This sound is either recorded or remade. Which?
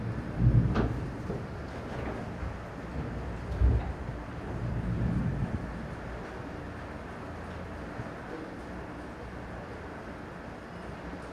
recorded